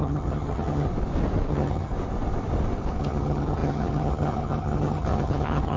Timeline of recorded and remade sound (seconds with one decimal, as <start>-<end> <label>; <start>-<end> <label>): 0.0-0.9 remade; 0.9-1.5 recorded; 1.5-1.9 remade; 1.9-3.0 recorded; 3.0-5.8 remade